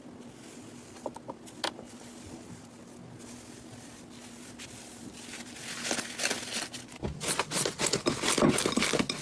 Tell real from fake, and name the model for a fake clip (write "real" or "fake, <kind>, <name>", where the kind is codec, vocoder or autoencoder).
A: real